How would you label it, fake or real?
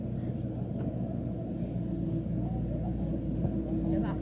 real